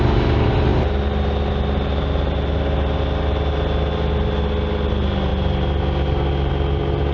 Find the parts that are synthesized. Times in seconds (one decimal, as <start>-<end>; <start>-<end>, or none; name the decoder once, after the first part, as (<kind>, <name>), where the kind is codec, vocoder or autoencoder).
none